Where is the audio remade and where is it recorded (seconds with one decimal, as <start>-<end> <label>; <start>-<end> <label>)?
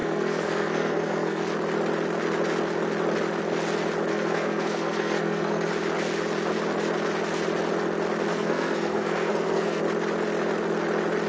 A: 0.0-1.4 remade; 1.4-4.1 recorded; 4.1-5.7 remade; 5.7-8.3 recorded; 8.3-9.8 remade; 9.8-11.3 recorded